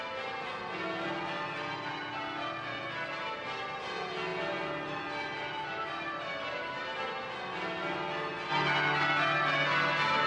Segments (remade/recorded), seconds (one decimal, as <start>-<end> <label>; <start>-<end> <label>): 0.0-10.3 recorded